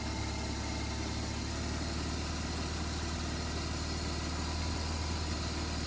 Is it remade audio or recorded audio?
recorded